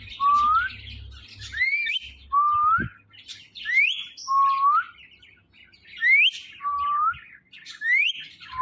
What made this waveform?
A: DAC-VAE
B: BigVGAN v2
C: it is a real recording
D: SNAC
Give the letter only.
C